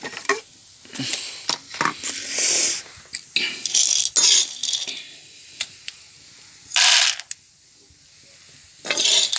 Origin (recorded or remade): recorded